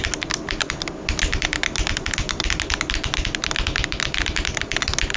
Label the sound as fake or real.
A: real